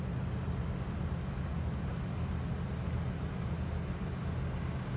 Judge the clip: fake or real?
real